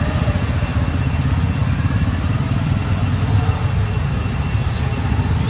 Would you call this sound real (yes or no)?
yes